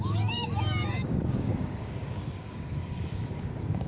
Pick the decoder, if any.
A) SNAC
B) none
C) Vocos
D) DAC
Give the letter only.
D